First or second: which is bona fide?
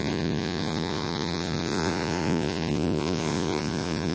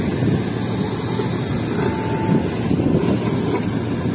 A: second